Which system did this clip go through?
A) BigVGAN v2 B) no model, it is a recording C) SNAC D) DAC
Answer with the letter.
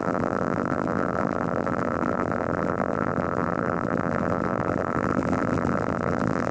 A